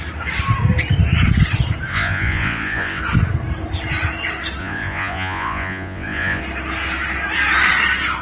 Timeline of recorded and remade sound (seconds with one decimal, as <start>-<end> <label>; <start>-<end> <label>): 0.0-1.9 recorded; 1.9-3.0 remade; 3.0-4.6 recorded; 4.6-6.4 remade; 6.4-8.2 recorded